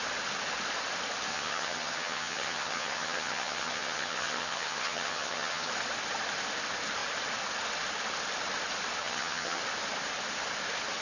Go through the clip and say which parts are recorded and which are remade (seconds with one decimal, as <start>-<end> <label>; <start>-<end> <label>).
0.0-1.3 recorded; 1.3-5.7 remade; 5.7-9.0 recorded; 9.0-9.6 remade; 9.6-11.0 recorded

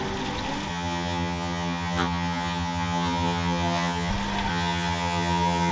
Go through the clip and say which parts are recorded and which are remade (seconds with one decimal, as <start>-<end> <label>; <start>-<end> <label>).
0.0-0.7 recorded; 0.7-4.1 remade; 4.1-4.5 recorded; 4.5-5.7 remade

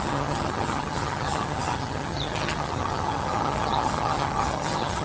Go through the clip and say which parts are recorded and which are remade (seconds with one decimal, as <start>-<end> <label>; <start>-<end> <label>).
0.0-5.0 remade

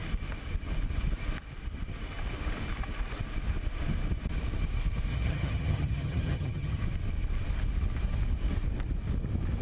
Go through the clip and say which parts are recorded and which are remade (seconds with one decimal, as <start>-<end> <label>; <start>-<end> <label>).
0.0-5.1 recorded; 5.1-6.8 remade; 6.8-9.6 recorded

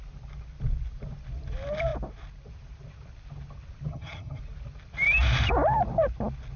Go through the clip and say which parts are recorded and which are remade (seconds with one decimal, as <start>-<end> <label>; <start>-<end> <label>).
0.0-3.9 recorded; 3.9-4.4 remade; 4.4-6.6 recorded

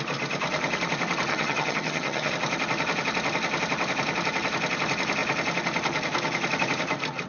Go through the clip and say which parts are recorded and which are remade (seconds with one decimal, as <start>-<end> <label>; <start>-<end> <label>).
0.0-1.3 recorded; 1.3-2.3 remade; 2.3-7.3 recorded

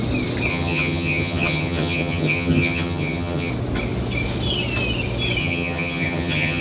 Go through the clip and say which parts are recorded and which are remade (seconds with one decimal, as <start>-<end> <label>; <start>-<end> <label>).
0.0-0.5 recorded; 0.5-3.5 remade; 3.5-5.4 recorded; 5.4-6.6 remade